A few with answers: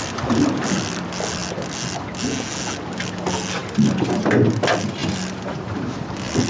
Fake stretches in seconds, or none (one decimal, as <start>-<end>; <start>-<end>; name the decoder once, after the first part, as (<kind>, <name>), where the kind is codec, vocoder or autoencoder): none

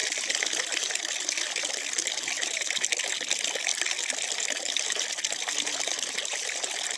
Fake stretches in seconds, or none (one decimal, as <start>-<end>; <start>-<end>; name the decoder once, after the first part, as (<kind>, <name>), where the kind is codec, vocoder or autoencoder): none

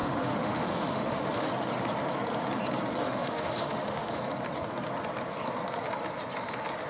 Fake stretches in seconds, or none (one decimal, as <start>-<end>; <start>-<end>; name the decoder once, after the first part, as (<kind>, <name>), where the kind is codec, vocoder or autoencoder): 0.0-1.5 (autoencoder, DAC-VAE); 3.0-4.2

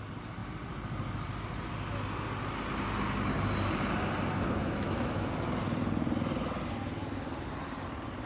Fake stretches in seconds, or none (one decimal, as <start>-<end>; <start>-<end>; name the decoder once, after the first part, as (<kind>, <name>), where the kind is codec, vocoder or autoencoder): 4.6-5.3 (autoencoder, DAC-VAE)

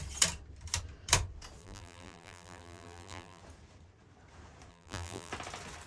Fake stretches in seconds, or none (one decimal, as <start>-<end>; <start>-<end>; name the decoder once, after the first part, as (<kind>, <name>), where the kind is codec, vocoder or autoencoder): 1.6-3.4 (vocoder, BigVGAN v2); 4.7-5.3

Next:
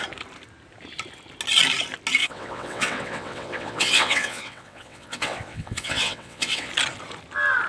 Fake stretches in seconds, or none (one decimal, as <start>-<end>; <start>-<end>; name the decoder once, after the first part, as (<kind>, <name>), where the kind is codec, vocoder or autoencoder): 2.2-6.7 (vocoder, WaveNeXt)

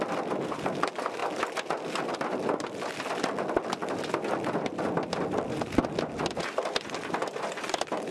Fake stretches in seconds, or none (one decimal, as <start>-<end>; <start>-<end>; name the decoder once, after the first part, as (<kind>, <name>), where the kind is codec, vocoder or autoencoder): 1.2-2.1 (vocoder, BigVGAN v2)